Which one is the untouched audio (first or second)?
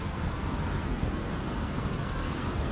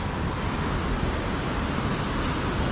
second